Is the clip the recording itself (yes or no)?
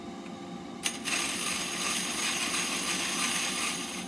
yes